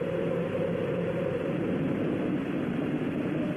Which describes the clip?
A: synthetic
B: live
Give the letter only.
B